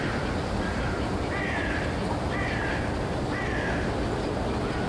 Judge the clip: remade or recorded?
recorded